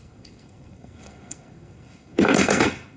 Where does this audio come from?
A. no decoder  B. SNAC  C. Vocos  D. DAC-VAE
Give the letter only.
B